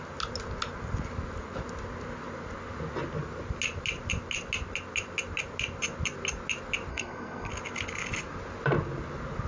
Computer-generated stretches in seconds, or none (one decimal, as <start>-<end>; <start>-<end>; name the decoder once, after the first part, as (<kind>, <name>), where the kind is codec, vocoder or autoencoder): 6.9-7.5 (codec, SNAC)